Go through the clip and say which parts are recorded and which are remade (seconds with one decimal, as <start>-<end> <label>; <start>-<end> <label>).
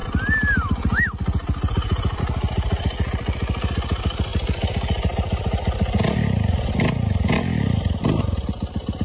0.0-9.0 recorded